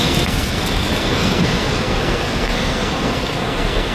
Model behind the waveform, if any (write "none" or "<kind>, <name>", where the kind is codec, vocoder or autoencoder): codec, SNAC